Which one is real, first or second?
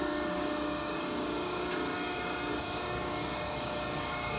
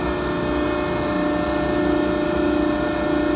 second